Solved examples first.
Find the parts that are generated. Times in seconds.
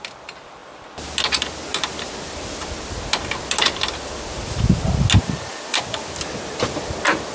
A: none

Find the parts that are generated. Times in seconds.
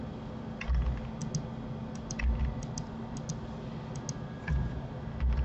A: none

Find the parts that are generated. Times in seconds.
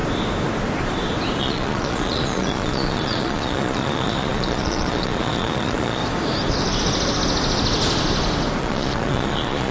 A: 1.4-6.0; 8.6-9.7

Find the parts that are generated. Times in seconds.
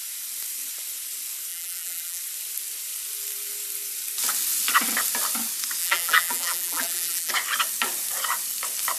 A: 1.5-2.2; 5.8-7.3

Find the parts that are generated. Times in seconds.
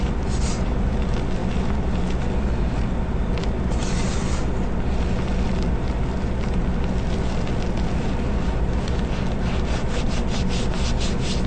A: none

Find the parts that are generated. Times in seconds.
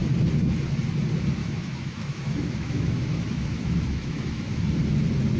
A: 1.4-4.6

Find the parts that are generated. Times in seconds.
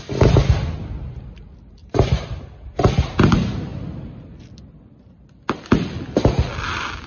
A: 1.8-2.4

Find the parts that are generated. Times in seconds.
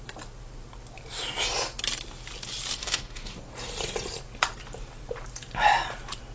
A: 2.8-3.4